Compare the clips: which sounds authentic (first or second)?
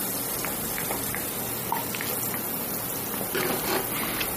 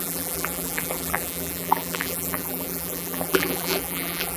first